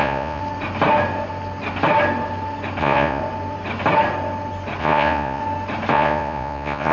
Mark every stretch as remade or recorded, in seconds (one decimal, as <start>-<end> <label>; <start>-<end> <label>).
0.0-0.4 remade; 0.4-2.8 recorded; 2.8-3.2 remade; 3.2-4.8 recorded; 4.8-5.4 remade; 5.4-5.9 recorded; 5.9-6.9 remade